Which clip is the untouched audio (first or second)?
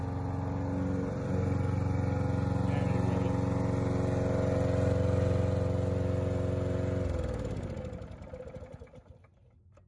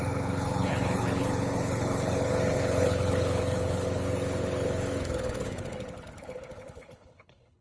first